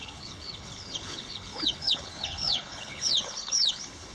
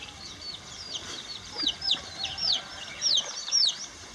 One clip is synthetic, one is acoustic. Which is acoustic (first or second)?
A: second